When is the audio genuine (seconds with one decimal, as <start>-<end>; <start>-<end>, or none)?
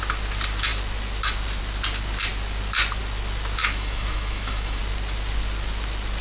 0.0-3.6; 4.8-6.2